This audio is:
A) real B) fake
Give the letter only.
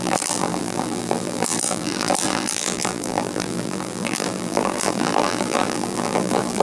B